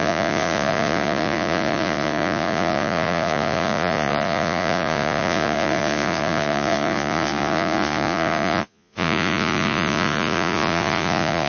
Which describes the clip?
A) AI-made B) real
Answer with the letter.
A